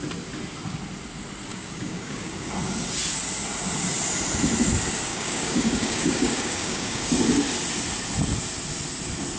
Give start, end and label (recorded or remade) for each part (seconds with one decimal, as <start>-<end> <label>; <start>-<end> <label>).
0.0-1.5 recorded; 1.5-2.5 remade; 2.5-5.1 recorded; 5.1-7.1 remade; 7.1-9.4 recorded